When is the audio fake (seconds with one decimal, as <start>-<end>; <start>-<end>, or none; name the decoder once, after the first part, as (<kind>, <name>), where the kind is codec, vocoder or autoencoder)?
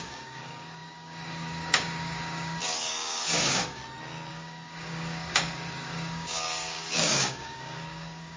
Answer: 0.0-3.8 (codec, DAC); 4.3-8.4